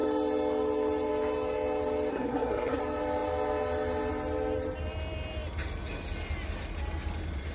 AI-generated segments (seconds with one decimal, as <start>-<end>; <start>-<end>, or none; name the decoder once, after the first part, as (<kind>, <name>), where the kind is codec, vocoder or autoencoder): 2.1-2.8 (codec, SNAC)